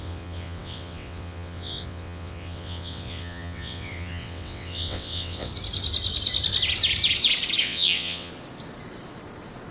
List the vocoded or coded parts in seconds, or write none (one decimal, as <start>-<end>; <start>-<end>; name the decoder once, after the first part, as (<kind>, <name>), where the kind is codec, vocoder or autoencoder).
0.0-5.5 (vocoder, WaveNeXt); 7.6-8.3